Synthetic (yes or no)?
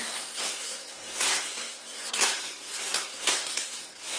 yes